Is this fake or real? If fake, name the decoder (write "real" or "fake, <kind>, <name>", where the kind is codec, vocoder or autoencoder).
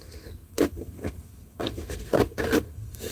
fake, codec, SNAC